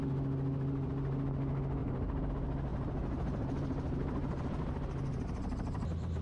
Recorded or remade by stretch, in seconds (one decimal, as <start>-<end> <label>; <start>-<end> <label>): 0.0-1.8 recorded; 1.8-2.3 remade; 2.3-2.7 recorded; 2.7-6.2 remade